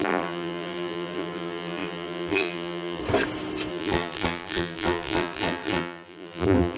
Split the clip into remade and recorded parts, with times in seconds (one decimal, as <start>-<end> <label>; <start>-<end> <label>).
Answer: 0.0-3.0 remade; 3.0-3.7 recorded; 3.7-6.8 remade